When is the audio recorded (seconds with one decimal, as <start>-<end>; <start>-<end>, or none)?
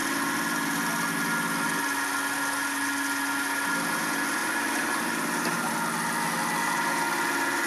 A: 0.0-4.4; 5.7-7.7